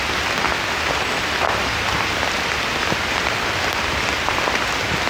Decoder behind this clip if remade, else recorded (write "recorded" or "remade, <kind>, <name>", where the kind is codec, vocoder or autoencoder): recorded